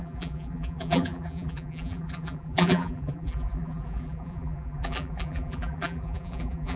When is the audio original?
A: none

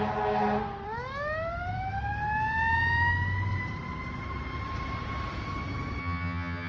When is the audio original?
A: 0.0-6.0

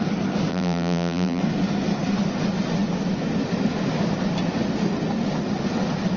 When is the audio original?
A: 0.0-0.5; 1.4-6.2